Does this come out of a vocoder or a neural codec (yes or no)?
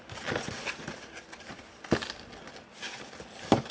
no